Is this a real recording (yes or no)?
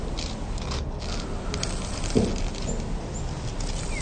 yes